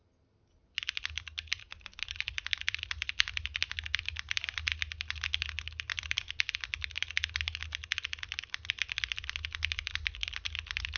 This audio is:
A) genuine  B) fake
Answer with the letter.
A